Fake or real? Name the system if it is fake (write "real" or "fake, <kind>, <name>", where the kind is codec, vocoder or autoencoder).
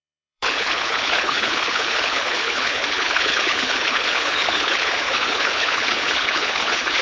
fake, codec, HILCodec